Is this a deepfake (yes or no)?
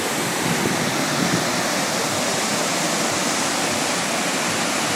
yes